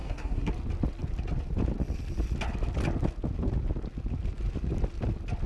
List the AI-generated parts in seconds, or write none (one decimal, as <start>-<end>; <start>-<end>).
0.0-0.5